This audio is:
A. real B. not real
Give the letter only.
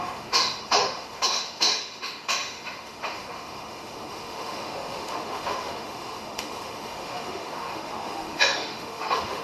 B